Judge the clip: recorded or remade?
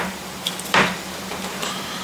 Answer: remade